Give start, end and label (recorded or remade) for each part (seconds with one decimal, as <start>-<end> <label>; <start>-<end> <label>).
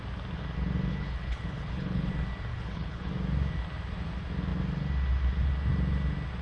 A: 0.0-0.9 recorded; 0.9-2.1 remade; 2.1-2.5 recorded; 2.5-3.1 remade; 3.1-6.4 recorded